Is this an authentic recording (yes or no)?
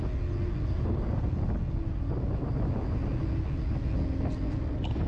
yes